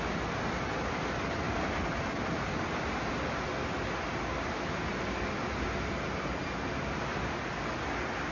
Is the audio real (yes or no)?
yes